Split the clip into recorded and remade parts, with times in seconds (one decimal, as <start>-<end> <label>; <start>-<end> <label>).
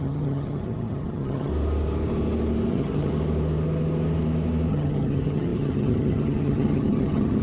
0.0-1.5 remade; 1.5-2.7 recorded; 2.7-3.1 remade; 3.1-4.7 recorded; 4.7-7.4 remade